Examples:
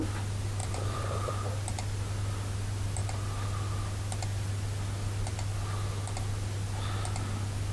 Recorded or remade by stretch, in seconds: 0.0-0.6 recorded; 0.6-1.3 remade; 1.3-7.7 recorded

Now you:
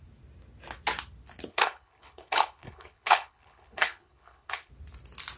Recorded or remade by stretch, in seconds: 0.0-1.5 recorded; 1.5-4.7 remade; 4.7-5.4 recorded

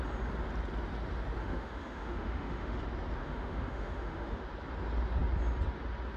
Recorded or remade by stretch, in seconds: 0.0-1.4 recorded; 1.4-2.8 remade; 2.8-3.2 recorded; 3.2-4.4 remade; 4.4-6.2 recorded

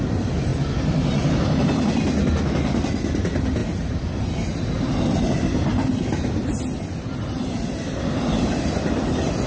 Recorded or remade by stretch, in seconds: 0.0-9.5 recorded